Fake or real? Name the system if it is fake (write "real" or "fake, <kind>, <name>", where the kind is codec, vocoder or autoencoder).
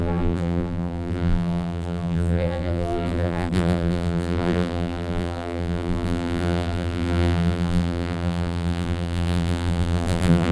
fake, vocoder, BigVGAN v2